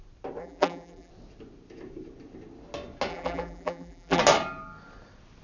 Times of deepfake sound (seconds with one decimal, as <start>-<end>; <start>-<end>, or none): 0.4-1.1; 3.1-4.2